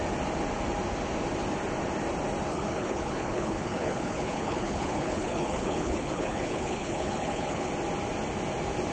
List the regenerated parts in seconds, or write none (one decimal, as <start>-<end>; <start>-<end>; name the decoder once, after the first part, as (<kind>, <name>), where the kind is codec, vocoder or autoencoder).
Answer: 2.5-7.7 (codec, HILCodec)